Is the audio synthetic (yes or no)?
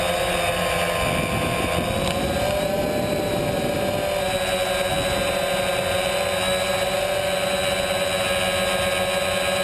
no